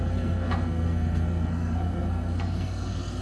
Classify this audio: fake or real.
fake